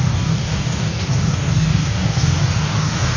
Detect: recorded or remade remade